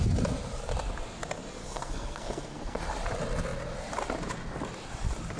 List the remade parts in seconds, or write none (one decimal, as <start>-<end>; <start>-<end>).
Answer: 1.6-2.8